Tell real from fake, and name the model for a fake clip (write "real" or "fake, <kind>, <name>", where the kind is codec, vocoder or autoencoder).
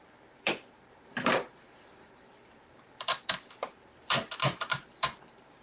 fake, vocoder, BigVGAN v2